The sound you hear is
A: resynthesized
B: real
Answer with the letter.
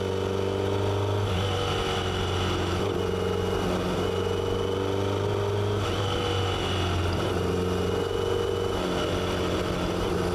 B